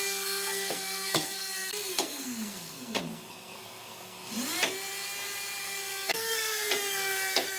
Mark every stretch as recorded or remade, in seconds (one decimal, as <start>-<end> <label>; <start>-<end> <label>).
0.0-4.3 remade; 4.3-5.6 recorded; 5.6-7.6 remade